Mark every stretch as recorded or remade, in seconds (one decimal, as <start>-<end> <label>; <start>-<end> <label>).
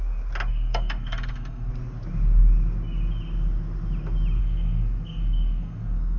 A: 0.0-0.5 recorded; 0.5-1.7 remade; 1.7-4.4 recorded; 4.4-6.2 remade